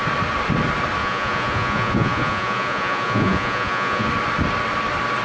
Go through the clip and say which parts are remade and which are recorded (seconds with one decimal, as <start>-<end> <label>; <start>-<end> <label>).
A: 0.0-1.0 recorded; 1.0-4.1 remade; 4.1-5.2 recorded